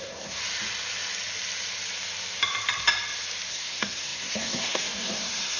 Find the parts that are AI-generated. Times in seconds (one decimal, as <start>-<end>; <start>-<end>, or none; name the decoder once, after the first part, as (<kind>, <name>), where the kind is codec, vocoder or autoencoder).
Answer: 0.0-0.4 (codec, SNAC); 3.5-5.6